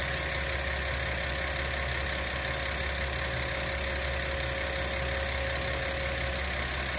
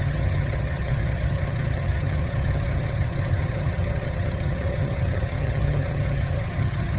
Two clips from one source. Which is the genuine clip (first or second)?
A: first